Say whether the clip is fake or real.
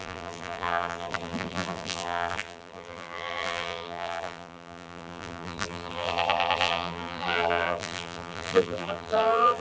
fake